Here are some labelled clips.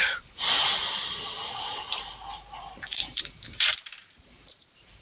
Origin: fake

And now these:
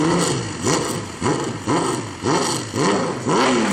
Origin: real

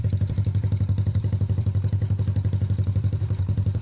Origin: fake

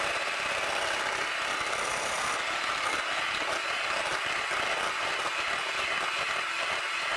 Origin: real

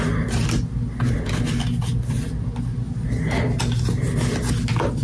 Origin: real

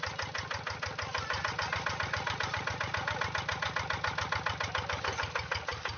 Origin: real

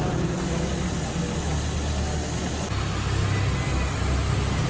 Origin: real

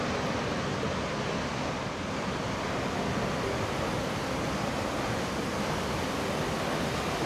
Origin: real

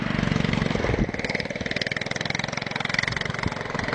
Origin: real